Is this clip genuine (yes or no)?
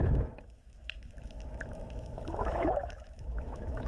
no